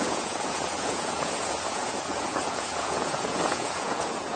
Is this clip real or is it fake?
fake